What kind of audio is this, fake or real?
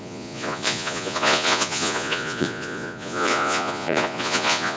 fake